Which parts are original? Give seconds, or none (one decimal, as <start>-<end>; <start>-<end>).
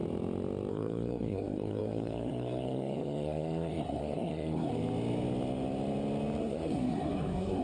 0.0-0.7; 4.7-6.4